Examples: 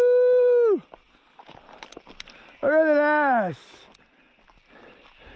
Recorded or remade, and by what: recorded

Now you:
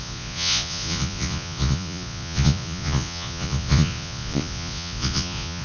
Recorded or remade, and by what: remade, vocoder, Vocos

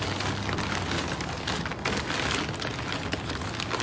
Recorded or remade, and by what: recorded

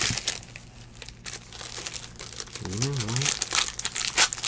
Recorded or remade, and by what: recorded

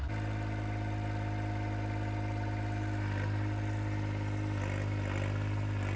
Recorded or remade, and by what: recorded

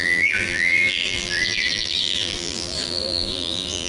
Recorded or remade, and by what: remade, vocoder, BigVGAN v2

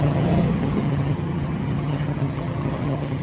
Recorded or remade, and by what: remade, vocoder, HiFi-GAN